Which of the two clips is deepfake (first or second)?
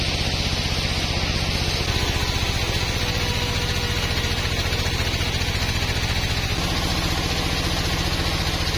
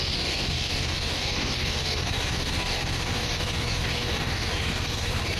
second